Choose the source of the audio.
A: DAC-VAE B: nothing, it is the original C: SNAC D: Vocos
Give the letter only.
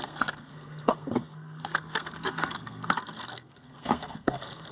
C